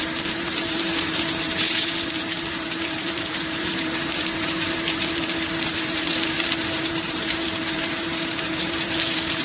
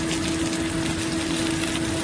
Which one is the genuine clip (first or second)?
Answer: second